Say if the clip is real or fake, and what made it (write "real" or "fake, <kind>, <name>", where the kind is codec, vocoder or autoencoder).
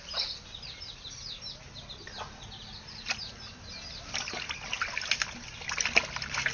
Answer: real